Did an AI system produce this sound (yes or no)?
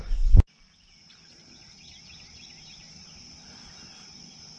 no